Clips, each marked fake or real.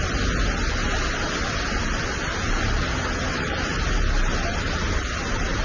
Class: real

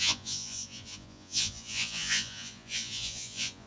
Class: fake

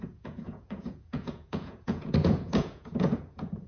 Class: fake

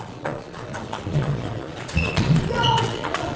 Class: fake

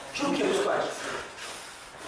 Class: fake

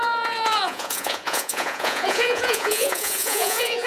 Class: fake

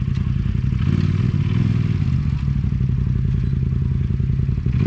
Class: real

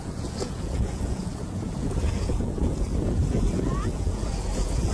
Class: fake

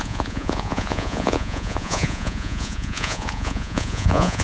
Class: fake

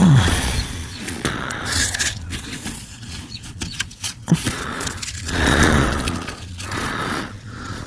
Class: fake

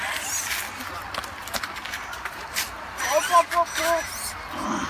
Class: real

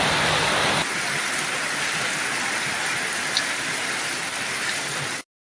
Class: real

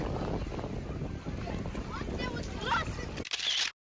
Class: real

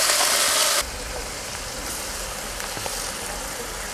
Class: real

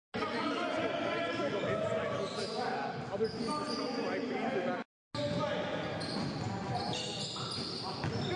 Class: real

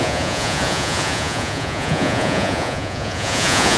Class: fake